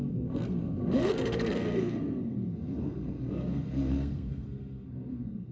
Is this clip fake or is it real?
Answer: fake